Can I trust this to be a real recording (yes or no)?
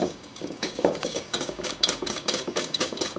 no